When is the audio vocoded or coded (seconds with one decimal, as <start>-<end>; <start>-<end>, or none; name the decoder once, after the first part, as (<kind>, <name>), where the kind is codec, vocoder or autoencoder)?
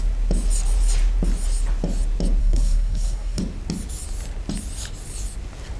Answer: 2.4-3.4 (codec, SNAC)